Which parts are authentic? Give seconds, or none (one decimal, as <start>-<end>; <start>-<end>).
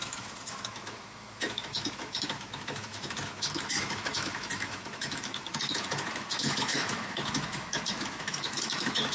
none